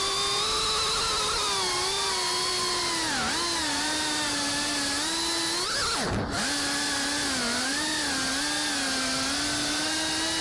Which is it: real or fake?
real